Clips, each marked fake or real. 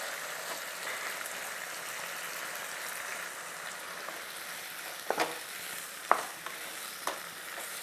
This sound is real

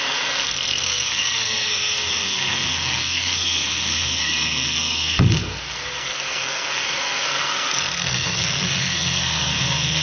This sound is fake